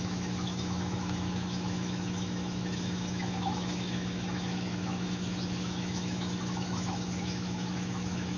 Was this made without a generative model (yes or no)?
no